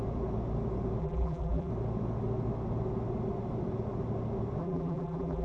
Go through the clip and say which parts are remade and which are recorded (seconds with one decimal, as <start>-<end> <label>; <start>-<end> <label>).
0.0-1.0 recorded; 1.0-1.7 remade; 1.7-4.6 recorded; 4.6-5.4 remade